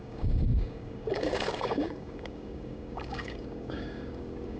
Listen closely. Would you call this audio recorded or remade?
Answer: remade